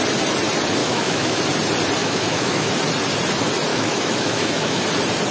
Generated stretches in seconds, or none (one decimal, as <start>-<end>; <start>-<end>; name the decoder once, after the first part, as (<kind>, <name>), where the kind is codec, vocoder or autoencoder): 0.8-1.4 (autoencoder, DAC-VAE); 2.0-2.7; 3.7-4.8